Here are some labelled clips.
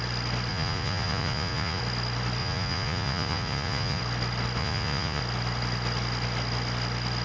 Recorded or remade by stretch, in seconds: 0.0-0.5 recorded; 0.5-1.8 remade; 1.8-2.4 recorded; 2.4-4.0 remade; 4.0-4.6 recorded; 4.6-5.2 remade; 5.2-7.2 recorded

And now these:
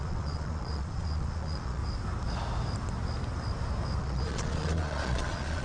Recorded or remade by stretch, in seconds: 0.0-1.8 remade; 1.8-4.0 recorded; 4.0-5.6 remade

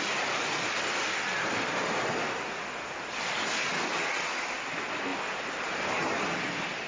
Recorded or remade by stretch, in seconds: 0.0-6.9 recorded

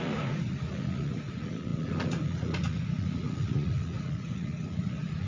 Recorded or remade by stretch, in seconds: 0.0-5.3 remade

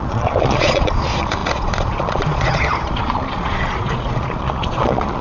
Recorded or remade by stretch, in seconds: 0.0-5.2 remade

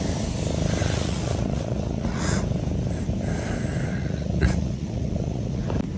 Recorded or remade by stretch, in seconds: 0.0-0.8 recorded; 0.8-2.4 remade; 2.4-3.9 recorded; 3.9-5.6 remade; 5.6-6.0 recorded

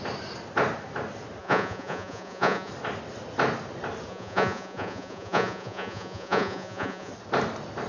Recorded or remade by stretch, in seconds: 0.0-1.4 recorded; 1.4-2.7 remade; 2.7-4.1 recorded; 4.1-7.1 remade; 7.1-7.9 recorded

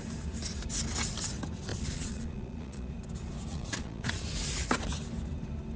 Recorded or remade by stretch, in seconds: 0.0-1.7 recorded; 1.7-2.9 remade; 2.9-3.5 recorded; 3.5-4.2 remade; 4.2-5.8 recorded